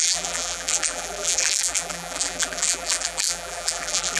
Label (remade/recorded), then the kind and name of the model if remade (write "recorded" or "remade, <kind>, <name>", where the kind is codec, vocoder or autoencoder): remade, vocoder, BigVGAN v2